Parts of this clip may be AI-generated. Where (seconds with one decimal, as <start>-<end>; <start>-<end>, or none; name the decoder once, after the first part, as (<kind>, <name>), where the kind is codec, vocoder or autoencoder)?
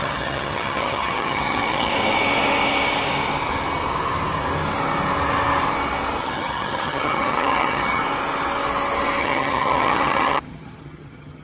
0.0-1.9 (vocoder, HiFi-GAN); 6.2-8.0; 9.2-11.4